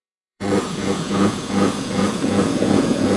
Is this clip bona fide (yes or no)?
no